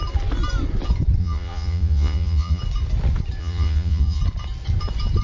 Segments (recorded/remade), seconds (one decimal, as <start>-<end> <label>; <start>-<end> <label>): 0.0-1.2 recorded; 1.2-2.6 remade; 2.6-3.4 recorded; 3.4-4.2 remade; 4.2-5.2 recorded